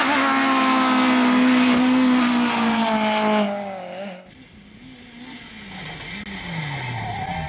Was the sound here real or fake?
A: real